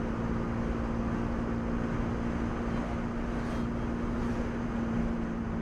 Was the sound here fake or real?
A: real